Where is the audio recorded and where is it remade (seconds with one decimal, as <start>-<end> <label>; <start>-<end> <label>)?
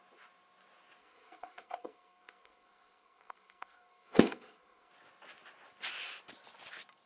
0.0-1.0 recorded; 1.0-4.9 remade; 4.9-7.1 recorded